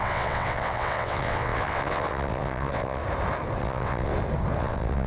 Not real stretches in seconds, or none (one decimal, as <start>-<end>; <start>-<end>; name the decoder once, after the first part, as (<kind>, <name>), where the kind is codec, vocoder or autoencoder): 0.0-3.0 (vocoder, WaveNeXt); 3.6-4.1; 4.6-5.1